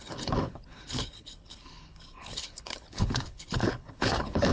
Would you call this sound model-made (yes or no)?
yes